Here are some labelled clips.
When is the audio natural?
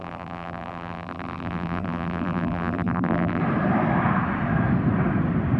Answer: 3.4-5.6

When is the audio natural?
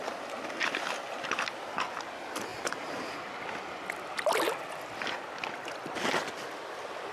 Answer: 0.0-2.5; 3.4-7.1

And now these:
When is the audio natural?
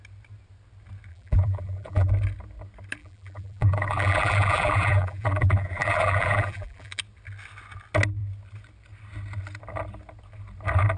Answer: 0.0-1.1; 2.1-3.0; 7.0-11.0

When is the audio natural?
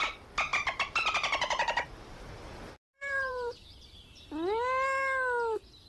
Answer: 0.0-0.5; 3.8-5.9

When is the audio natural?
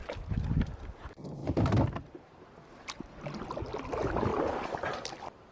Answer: 0.0-4.3